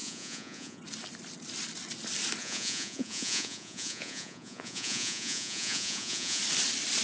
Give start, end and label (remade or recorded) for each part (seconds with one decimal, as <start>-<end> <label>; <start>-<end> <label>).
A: 0.0-0.8 remade; 0.8-2.4 recorded; 2.4-6.4 remade; 6.4-7.0 recorded